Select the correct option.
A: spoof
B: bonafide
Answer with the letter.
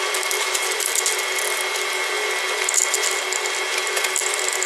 B